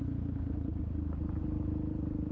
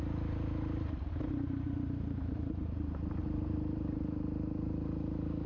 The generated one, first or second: second